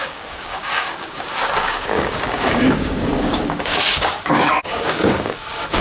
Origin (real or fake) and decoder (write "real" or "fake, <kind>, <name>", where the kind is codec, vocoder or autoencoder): fake, codec, DAC